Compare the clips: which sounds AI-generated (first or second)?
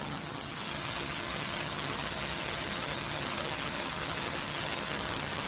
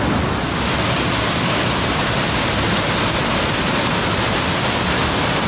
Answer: first